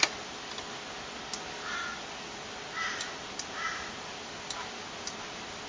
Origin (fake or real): real